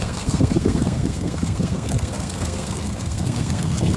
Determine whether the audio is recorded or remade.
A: remade